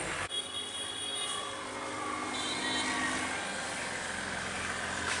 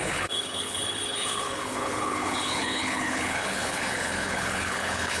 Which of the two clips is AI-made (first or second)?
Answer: second